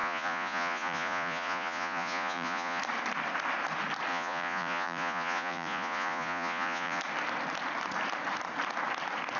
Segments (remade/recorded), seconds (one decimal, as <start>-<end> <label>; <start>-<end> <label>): 0.0-2.8 remade; 2.8-4.1 recorded; 4.1-7.0 remade; 7.0-9.4 recorded